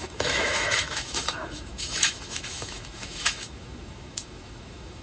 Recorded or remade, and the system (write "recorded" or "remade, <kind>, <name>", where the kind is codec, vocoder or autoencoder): remade, autoencoder, DAC-VAE